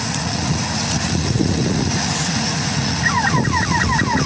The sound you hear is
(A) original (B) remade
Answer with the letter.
B